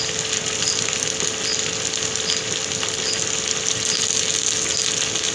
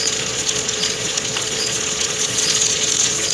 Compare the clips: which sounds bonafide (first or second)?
first